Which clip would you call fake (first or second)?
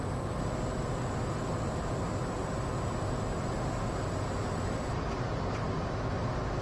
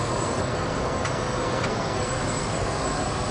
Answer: second